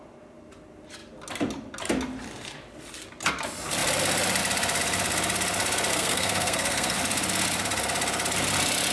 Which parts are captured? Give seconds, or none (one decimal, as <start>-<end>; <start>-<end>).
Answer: 0.0-5.9; 7.0-8.9